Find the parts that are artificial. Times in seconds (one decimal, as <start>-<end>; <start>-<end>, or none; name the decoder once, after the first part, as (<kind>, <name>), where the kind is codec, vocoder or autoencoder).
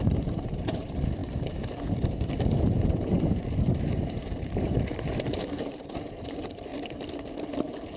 0.0-6.7 (vocoder, BigVGAN v2); 7.6-8.0